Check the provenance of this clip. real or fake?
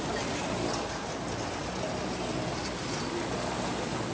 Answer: real